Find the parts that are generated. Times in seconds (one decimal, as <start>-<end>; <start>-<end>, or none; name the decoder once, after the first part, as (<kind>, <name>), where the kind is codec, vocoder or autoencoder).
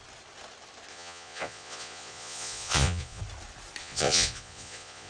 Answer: 0.9-3.2 (vocoder, Vocos); 3.8-5.1